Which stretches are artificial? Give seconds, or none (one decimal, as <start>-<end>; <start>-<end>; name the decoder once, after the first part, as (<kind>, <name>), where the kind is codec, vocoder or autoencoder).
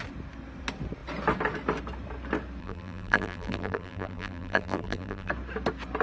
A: 2.6-5.3 (vocoder, BigVGAN v2)